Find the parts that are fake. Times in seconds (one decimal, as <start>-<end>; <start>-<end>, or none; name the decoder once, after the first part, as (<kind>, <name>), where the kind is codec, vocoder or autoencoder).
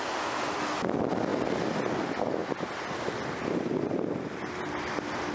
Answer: none